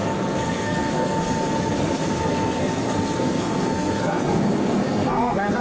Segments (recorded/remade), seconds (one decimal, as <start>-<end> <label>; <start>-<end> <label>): 0.0-5.6 remade